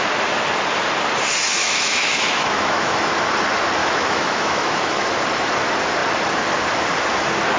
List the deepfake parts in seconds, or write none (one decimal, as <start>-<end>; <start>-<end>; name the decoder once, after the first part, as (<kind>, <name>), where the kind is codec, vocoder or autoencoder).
1.6-3.1 (autoencoder, DAC-VAE); 3.8-5.1